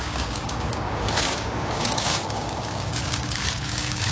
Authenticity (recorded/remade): remade